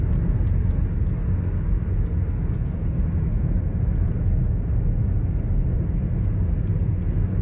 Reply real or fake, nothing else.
real